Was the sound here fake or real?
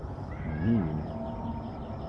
real